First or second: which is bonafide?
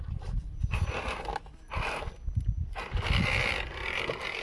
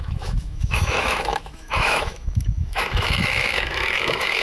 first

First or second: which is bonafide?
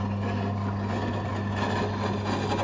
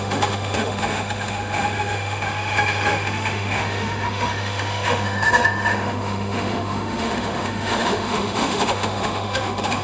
first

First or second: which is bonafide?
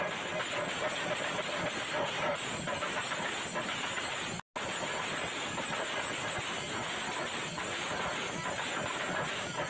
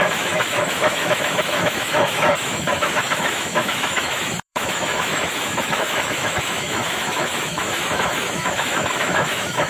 first